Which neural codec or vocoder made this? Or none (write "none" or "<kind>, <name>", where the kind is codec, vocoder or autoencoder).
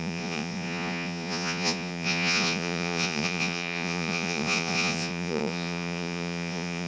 vocoder, Vocos